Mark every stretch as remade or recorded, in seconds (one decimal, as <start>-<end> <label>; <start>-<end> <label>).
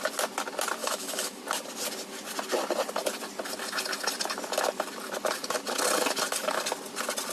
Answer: 0.0-0.8 recorded; 0.8-1.4 remade; 1.4-7.3 recorded